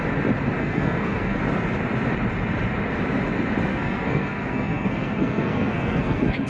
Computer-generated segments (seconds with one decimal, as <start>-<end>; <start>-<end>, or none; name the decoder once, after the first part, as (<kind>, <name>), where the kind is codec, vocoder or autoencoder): 0.6-1.4 (codec, SNAC); 3.7-6.5